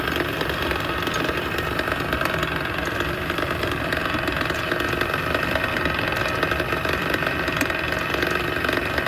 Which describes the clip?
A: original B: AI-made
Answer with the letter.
B